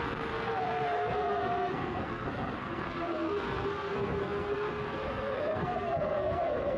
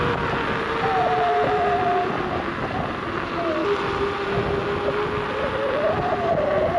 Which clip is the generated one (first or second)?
first